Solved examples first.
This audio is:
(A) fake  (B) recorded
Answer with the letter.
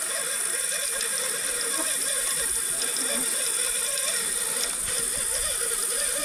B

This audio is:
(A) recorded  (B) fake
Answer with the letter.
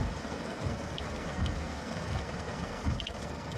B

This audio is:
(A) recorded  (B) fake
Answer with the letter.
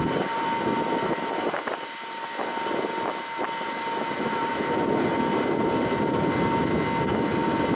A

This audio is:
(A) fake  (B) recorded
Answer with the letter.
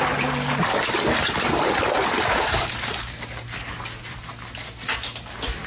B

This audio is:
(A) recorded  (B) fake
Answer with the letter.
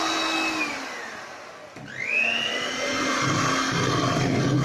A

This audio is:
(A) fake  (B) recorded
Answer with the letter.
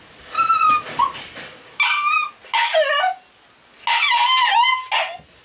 B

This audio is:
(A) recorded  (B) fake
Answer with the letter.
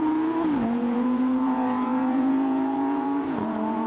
B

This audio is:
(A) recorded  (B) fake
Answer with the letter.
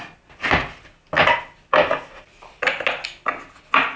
A